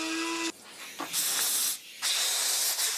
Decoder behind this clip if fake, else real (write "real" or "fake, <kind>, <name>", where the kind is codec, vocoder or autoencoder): real